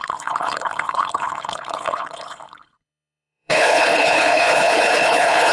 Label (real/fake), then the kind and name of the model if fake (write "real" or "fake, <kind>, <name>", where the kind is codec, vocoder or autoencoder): fake, codec, HILCodec